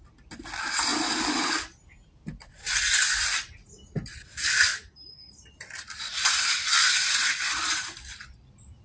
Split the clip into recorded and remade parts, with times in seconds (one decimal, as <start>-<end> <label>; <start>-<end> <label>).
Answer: 0.0-8.8 recorded